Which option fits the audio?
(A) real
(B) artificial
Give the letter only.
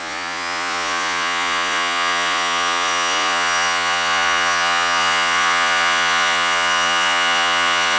B